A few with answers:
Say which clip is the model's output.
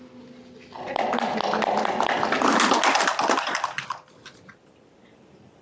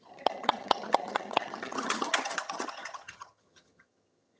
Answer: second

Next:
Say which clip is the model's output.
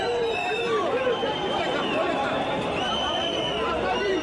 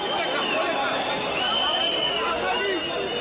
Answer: first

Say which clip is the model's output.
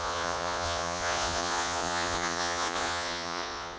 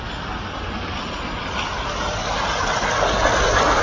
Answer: first